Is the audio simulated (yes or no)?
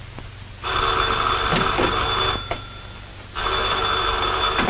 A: no